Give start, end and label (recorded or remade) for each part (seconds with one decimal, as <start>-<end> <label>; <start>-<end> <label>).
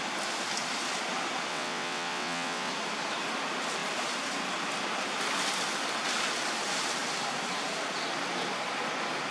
0.0-1.5 recorded; 1.5-2.7 remade; 2.7-9.3 recorded